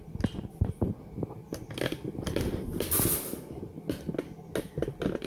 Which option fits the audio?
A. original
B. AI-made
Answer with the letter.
A